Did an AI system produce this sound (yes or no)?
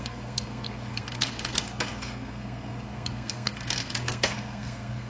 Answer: yes